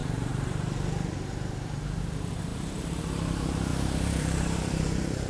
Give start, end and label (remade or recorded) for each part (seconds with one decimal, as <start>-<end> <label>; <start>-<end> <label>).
0.0-2.0 remade; 2.0-2.5 recorded; 2.5-3.0 remade; 3.0-3.7 recorded; 3.7-5.3 remade